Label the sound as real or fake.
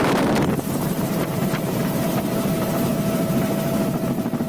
fake